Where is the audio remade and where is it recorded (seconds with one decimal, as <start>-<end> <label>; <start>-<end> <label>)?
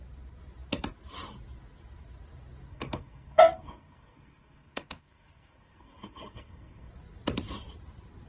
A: 0.0-2.7 recorded; 2.7-6.9 remade; 6.9-8.3 recorded